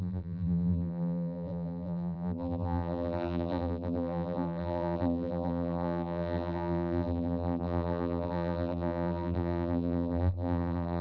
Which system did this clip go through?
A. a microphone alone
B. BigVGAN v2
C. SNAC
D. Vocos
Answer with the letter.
B